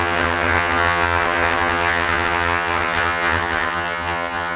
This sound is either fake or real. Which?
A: fake